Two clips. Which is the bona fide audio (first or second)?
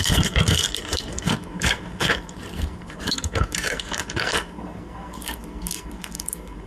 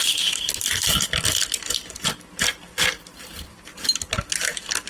second